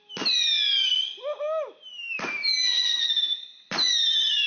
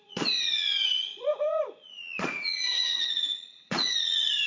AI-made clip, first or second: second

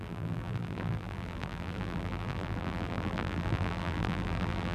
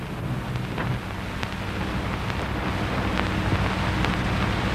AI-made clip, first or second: first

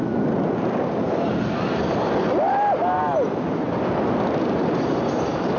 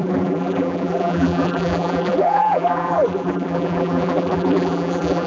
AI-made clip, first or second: second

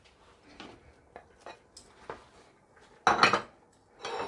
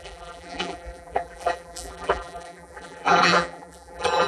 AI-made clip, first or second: second